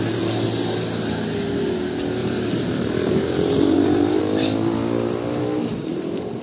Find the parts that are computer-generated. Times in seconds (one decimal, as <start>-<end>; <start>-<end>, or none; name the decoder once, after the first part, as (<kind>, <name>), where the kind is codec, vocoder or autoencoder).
2.2-4.2 (vocoder, BigVGAN v2); 5.7-6.4